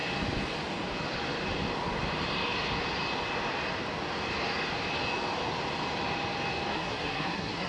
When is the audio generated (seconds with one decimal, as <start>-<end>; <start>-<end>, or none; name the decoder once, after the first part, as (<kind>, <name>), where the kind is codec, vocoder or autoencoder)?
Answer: 6.7-7.7 (codec, SNAC)